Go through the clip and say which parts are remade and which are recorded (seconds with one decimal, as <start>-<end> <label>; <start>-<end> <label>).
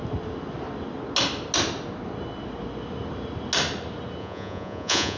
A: 0.0-4.2 recorded; 4.2-5.2 remade